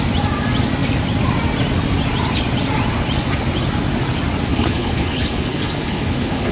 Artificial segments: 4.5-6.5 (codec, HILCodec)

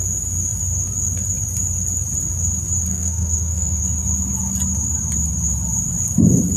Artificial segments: 2.9-3.8 (codec, SNAC)

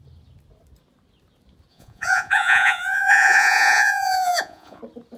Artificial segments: 1.7-4.8 (vocoder, Vocos)

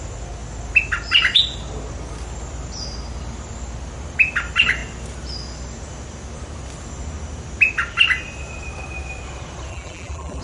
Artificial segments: 9.7-10.4 (vocoder, BigVGAN v2)

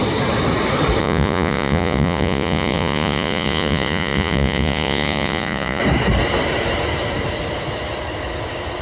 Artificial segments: 1.0-5.8 (vocoder, Vocos)

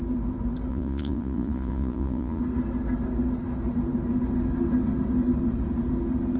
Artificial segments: 0.7-2.4 (vocoder, Vocos)

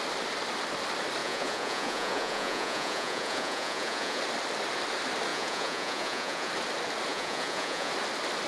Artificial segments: 1.2-4.2 (vocoder, Vocos); 5.3-6.5; 7.1-7.9

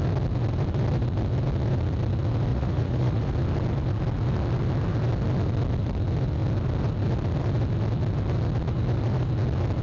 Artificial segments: 2.5-3.3 (vocoder, Vocos)